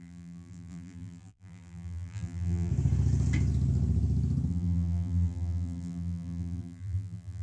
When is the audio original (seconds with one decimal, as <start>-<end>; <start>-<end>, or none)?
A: 2.7-4.5